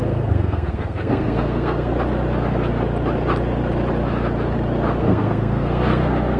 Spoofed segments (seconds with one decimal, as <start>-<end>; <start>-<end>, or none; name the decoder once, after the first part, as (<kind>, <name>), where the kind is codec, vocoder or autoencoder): 0.0-1.9 (codec, SNAC); 5.0-6.4